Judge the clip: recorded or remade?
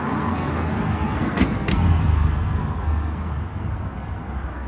remade